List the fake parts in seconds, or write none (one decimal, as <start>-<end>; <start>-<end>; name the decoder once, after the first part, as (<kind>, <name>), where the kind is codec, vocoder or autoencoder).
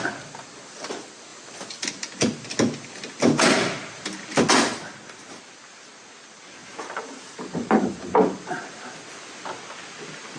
6.6-8.0 (vocoder, BigVGAN v2)